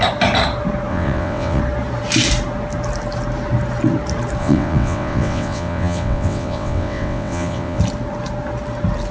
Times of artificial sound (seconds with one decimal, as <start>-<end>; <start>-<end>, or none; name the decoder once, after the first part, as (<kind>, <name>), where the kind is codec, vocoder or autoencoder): 0.9-1.6 (vocoder, WaveNeXt); 4.4-7.8